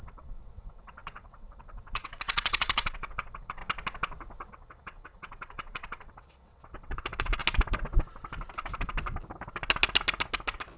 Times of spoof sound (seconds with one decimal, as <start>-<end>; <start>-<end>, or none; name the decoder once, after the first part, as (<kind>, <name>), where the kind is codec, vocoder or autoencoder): 0.0-3.6 (vocoder, WaveNeXt); 4.5-7.4